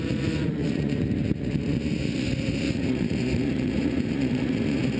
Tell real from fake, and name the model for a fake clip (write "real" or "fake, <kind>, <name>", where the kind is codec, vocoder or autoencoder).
fake, vocoder, Vocos